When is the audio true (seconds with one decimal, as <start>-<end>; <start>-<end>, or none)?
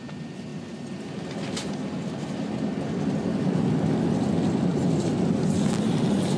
0.0-6.4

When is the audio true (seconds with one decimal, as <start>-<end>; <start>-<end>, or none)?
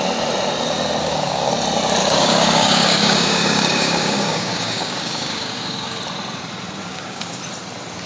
0.0-1.0; 1.5-2.0; 6.0-6.8; 7.4-8.1